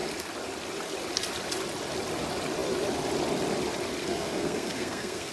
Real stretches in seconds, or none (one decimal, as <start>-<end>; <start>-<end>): 0.0-4.0